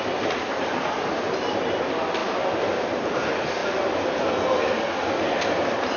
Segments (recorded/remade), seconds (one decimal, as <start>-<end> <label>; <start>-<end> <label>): 0.0-6.0 recorded

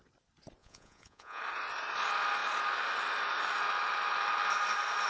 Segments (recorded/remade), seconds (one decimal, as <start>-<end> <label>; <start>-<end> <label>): 0.0-0.6 recorded; 0.6-1.4 remade; 1.4-5.1 recorded